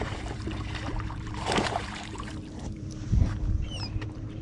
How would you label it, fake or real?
fake